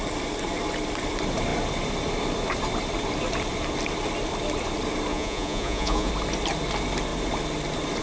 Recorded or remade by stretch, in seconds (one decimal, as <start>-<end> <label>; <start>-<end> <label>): 0.0-5.1 recorded; 5.1-6.1 remade; 6.1-8.0 recorded